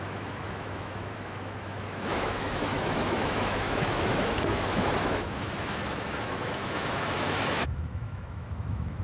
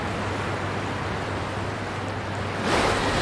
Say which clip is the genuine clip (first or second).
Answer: second